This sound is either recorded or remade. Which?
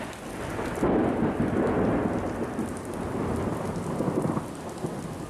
recorded